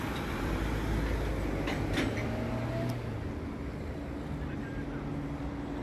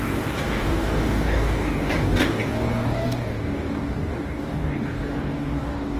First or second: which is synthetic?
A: second